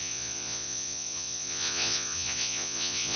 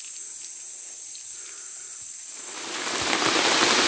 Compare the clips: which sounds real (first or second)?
second